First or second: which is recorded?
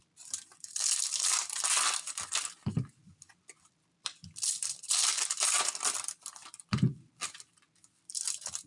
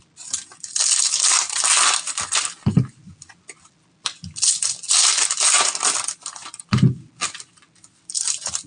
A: second